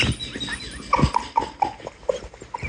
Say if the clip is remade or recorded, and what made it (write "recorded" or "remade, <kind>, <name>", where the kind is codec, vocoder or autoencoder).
recorded